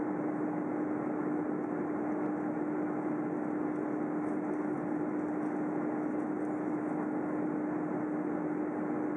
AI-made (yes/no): no